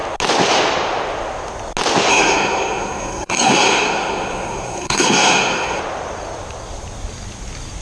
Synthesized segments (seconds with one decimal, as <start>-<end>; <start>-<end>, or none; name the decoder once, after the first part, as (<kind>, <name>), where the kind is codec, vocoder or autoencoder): 2.1-5.8 (codec, SNAC)